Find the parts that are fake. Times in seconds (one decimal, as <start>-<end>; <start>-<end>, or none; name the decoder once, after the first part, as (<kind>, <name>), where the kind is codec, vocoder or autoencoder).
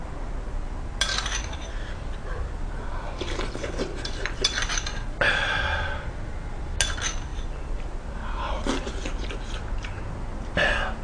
none